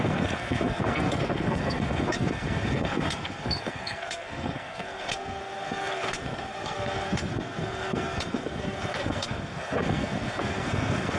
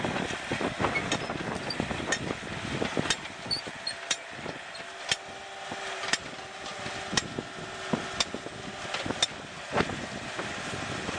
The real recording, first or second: second